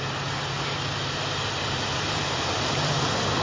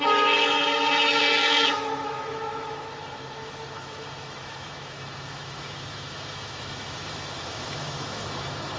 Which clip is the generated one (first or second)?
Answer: second